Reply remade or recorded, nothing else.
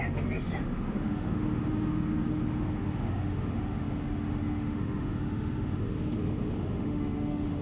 remade